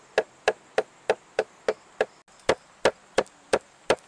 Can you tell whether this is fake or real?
real